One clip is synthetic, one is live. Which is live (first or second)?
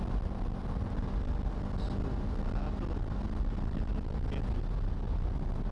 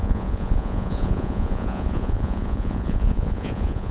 first